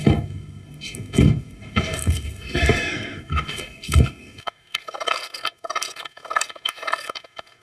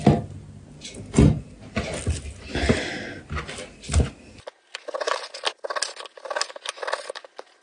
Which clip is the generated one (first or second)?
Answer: first